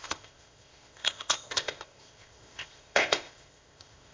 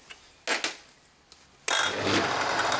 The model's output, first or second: first